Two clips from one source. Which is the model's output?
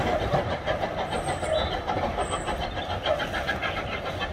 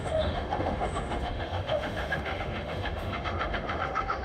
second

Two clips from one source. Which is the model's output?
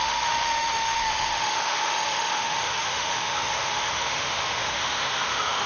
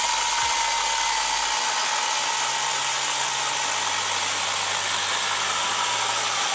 first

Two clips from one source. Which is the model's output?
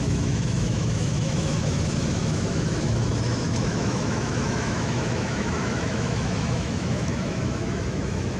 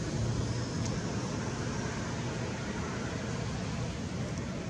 first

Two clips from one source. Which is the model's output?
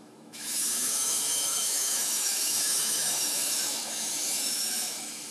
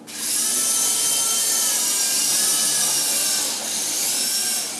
first